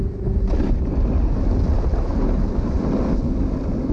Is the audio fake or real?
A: real